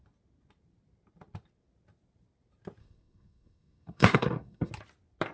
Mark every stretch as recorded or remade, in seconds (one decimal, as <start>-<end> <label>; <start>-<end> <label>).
0.0-2.8 recorded; 2.8-4.7 remade; 4.7-5.3 recorded